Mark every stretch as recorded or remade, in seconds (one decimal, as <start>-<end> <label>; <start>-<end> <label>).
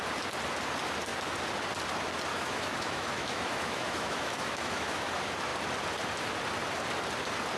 0.0-2.3 recorded; 2.3-5.1 remade; 5.1-7.6 recorded